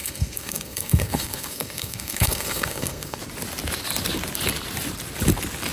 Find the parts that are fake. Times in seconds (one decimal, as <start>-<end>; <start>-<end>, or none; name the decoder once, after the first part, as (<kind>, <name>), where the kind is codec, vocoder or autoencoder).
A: 0.0-3.2 (codec, SNAC)